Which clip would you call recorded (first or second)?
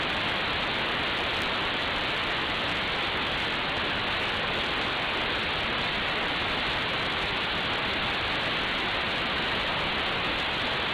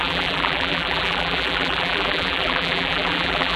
first